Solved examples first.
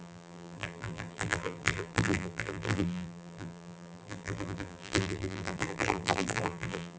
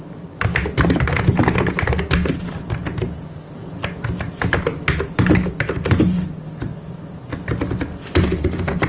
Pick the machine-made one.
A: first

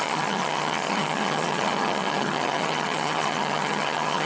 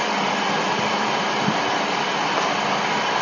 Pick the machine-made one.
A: first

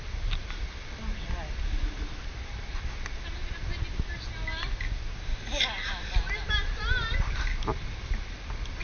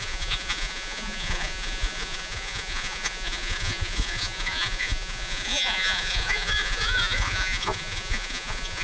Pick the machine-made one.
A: second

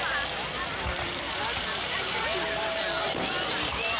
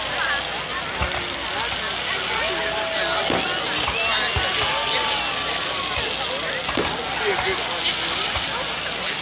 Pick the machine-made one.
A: first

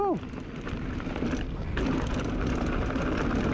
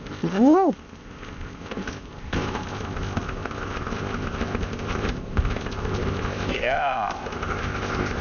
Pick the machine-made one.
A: second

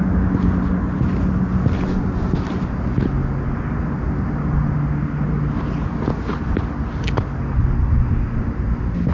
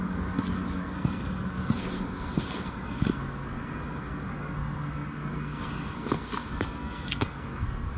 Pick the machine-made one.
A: second